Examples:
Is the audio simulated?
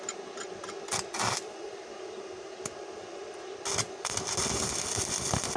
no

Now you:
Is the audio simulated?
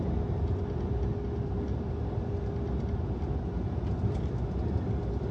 no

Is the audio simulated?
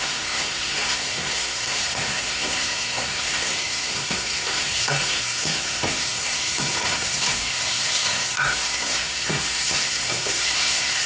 yes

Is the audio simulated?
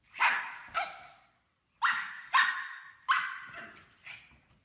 no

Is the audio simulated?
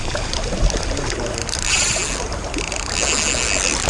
no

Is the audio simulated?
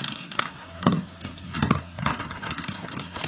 yes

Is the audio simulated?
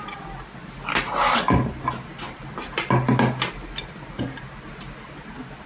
no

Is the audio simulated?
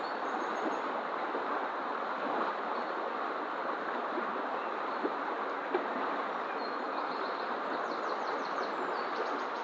no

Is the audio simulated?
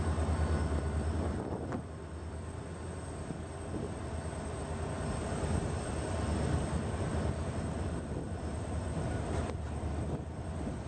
no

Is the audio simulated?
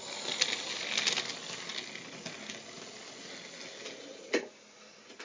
no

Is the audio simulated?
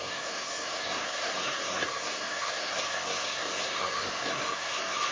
yes